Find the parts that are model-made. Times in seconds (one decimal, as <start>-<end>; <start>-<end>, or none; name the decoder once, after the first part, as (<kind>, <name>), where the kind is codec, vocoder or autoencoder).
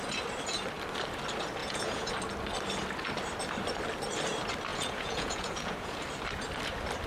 1.6-2.1 (vocoder, Vocos); 4.7-6.0